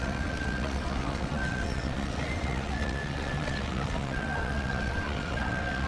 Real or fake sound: fake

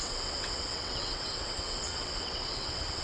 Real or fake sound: fake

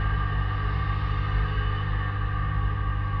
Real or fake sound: real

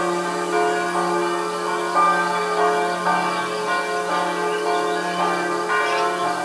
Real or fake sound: real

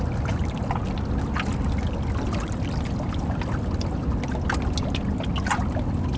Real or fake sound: real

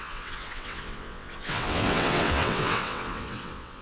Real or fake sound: fake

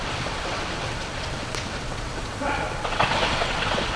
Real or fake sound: fake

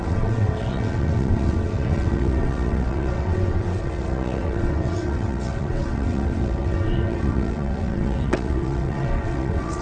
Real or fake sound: fake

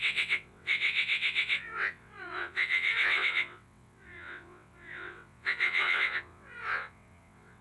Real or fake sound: fake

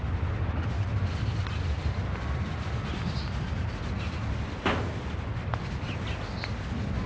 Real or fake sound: real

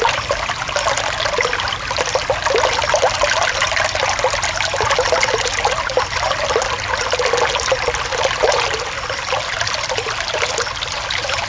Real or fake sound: real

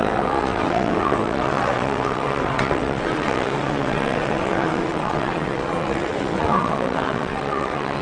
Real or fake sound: fake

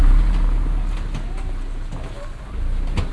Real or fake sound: real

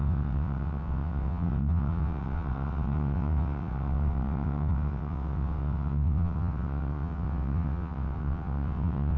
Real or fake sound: fake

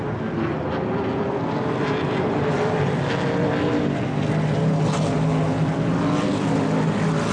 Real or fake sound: real